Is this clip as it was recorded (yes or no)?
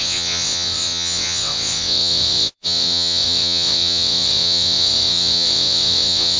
no